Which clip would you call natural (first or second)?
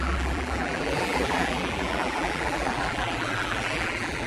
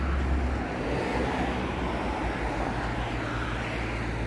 second